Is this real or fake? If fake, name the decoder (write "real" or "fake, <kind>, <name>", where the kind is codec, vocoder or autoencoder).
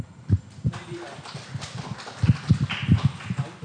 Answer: real